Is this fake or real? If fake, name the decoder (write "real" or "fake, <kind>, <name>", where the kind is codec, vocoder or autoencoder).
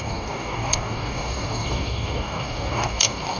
fake, codec, DAC